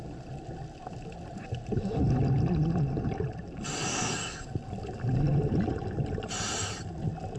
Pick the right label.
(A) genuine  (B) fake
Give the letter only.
A